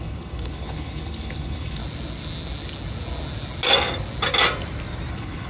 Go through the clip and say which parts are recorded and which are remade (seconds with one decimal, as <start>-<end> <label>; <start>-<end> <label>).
0.0-1.8 remade; 1.8-5.1 recorded; 5.1-5.5 remade